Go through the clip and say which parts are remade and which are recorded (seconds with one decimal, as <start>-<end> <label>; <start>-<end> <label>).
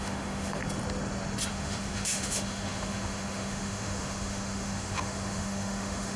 0.0-0.6 remade; 0.6-1.5 recorded; 1.5-6.2 remade